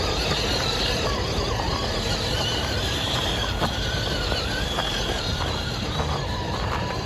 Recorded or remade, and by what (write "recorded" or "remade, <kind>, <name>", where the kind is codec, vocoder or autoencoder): remade, vocoder, BigVGAN v2